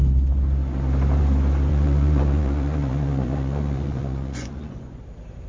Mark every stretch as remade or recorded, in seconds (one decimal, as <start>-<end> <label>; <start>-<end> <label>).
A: 0.0-1.7 recorded; 1.7-5.0 remade; 5.0-5.5 recorded